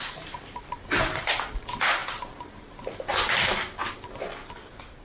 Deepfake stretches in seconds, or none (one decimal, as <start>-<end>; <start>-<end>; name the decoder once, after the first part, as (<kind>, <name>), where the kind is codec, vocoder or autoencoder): none